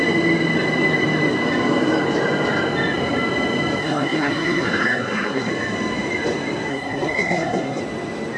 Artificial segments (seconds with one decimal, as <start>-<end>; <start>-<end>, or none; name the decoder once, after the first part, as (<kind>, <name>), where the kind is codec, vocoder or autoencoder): 3.8-5.5 (codec, SNAC); 6.7-7.8